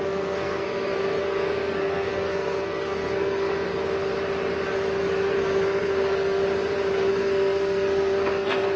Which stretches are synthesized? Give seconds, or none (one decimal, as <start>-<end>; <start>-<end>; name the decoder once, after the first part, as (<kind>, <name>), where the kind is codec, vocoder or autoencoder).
0.0-3.8 (codec, SNAC); 5.0-6.4; 7.1-8.8